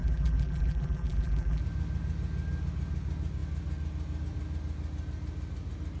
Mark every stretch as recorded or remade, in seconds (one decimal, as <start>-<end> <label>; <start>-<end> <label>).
0.0-1.6 remade; 1.6-6.0 recorded